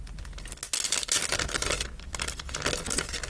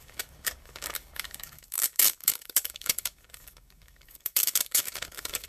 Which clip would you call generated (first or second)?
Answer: second